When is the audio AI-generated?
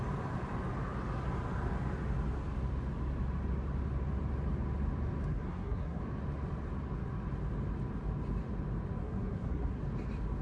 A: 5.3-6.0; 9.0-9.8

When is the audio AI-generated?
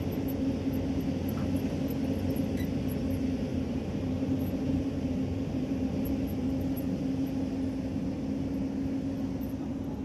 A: 3.5-7.0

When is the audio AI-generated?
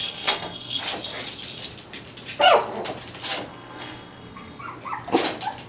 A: 0.0-0.8; 3.5-4.6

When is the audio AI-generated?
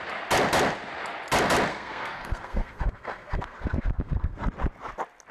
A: 1.7-4.5